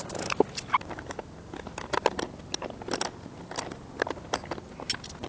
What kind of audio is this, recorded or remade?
recorded